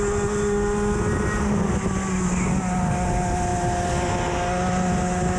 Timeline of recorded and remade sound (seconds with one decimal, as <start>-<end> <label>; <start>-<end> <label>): 0.0-5.4 recorded